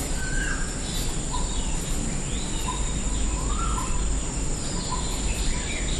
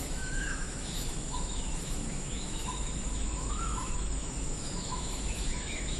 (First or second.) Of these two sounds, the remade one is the second